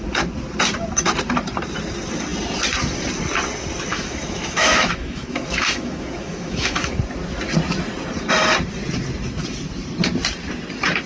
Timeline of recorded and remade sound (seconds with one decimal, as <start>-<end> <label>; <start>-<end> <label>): 0.0-3.9 recorded; 3.9-7.0 remade; 7.0-11.1 recorded